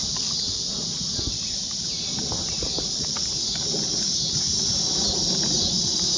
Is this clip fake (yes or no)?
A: no